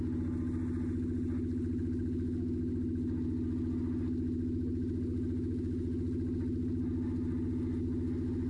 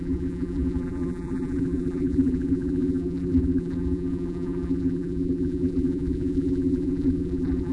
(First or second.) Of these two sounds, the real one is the first